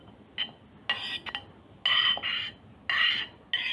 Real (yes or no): yes